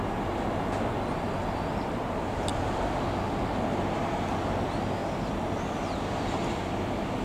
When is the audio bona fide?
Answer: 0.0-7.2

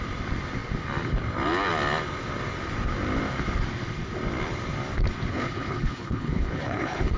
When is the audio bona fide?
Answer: 0.0-5.3

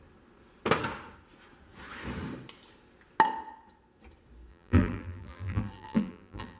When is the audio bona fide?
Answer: 0.0-4.5

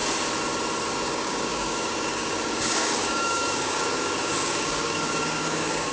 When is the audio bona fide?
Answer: 0.0-0.9

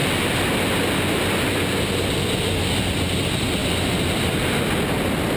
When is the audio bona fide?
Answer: 0.0-5.4

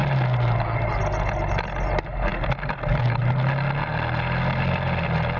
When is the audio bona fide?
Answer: 0.0-5.4

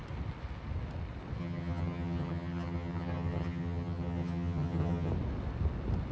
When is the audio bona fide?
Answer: 0.0-1.4; 5.1-6.1